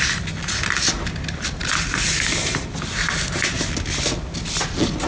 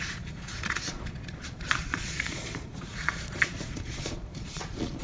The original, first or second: first